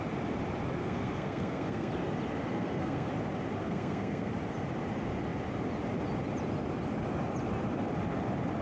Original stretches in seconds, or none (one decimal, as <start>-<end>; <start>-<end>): 0.0-0.8; 1.9-2.5; 3.1-3.6; 4.3-8.6